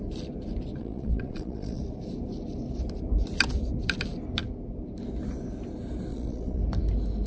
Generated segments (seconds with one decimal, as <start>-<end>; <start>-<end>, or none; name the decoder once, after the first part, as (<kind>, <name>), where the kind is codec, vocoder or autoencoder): 0.8-1.8 (vocoder, Vocos); 6.1-6.6